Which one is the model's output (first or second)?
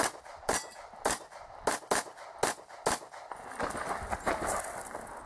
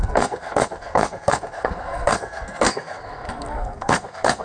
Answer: second